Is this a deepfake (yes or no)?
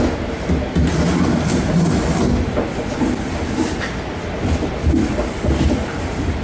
no